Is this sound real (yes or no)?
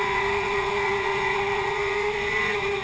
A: no